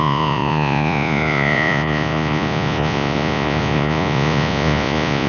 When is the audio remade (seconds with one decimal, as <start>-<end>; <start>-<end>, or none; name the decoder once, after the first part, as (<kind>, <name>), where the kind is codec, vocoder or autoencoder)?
0.0-5.3 (vocoder, Vocos)